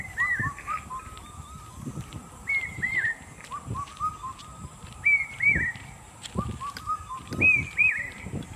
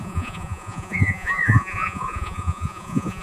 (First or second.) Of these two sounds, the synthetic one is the second